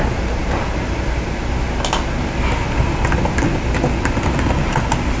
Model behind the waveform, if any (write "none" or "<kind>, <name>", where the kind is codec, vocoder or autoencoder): none